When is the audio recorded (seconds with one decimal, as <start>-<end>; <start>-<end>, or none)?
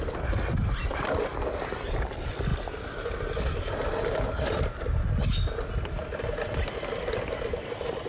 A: 0.0-8.1